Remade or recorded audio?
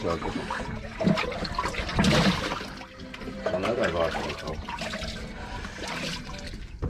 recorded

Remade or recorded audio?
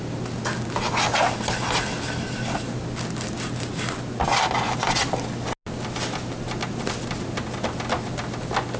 recorded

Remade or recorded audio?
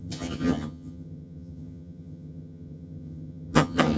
remade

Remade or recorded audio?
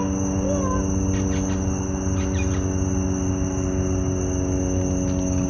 recorded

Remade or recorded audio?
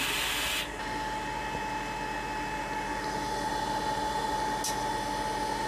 recorded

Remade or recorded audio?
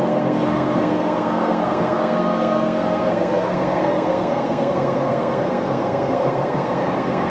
remade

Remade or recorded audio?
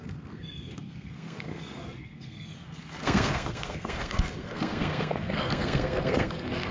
remade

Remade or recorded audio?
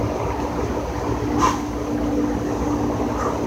recorded